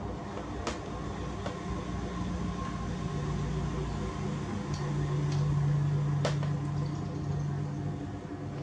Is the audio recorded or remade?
recorded